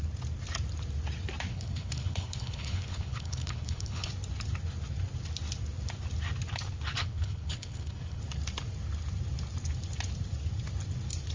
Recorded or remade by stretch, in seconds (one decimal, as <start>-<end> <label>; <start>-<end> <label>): 0.0-1.5 recorded; 1.5-4.1 remade; 4.1-7.0 recorded; 7.0-8.2 remade; 8.2-11.3 recorded